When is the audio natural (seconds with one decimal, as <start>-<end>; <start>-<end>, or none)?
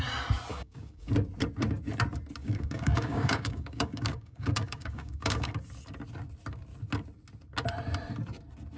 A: 0.0-0.5; 1.1-2.4; 5.5-8.8